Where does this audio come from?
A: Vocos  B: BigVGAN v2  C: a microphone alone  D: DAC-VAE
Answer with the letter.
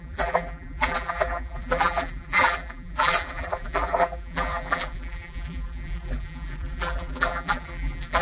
B